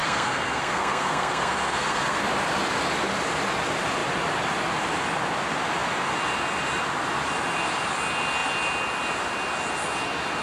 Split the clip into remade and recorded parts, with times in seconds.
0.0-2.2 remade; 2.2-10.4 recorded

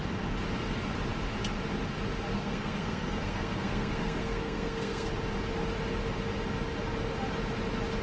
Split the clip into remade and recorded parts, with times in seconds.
0.0-2.3 recorded; 2.3-5.1 remade; 5.1-8.0 recorded

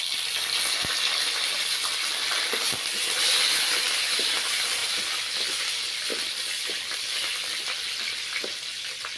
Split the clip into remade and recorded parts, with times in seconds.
0.0-9.2 recorded

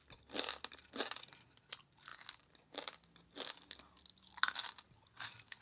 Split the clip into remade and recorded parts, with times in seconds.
0.0-5.6 recorded

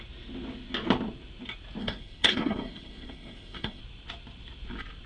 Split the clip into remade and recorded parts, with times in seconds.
0.0-1.8 recorded; 1.8-3.8 remade; 3.8-5.1 recorded

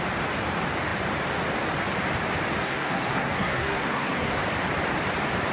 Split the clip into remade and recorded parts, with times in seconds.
0.0-2.6 recorded; 2.6-4.4 remade; 4.4-5.5 recorded